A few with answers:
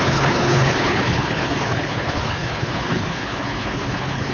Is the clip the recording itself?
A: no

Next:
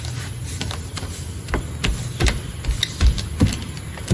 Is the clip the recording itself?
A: yes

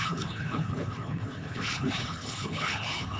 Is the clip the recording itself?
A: no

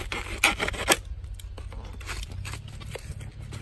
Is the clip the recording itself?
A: yes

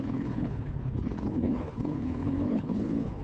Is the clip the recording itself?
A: no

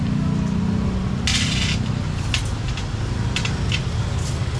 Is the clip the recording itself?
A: yes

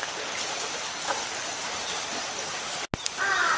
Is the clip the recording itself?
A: yes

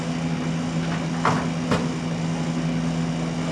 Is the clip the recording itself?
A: yes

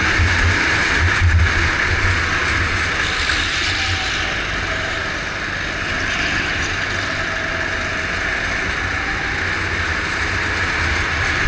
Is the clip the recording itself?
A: yes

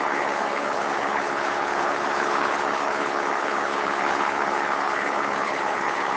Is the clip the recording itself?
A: no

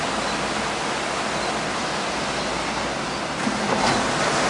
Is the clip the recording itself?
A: yes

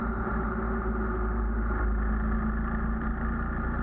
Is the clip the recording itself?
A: yes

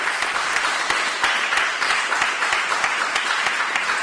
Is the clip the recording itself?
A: yes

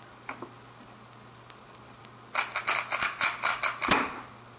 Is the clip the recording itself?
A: yes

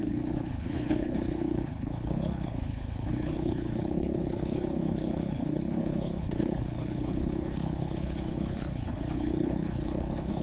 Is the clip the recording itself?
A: no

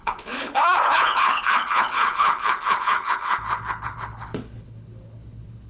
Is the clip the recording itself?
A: no